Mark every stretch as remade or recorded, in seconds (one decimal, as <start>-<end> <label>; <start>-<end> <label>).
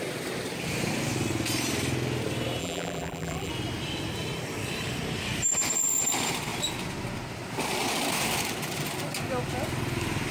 0.0-2.6 recorded; 2.6-3.5 remade; 3.5-10.3 recorded